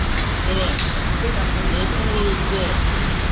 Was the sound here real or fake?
real